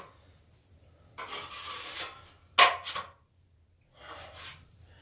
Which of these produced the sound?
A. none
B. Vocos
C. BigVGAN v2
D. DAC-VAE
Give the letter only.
A